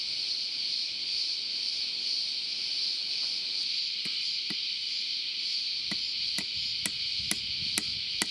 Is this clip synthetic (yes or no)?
no